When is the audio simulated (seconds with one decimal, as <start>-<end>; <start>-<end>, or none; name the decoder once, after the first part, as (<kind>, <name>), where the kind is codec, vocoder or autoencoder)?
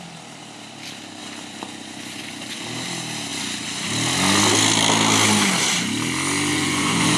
6.5-7.2 (vocoder, Vocos)